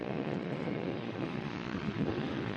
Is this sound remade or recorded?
remade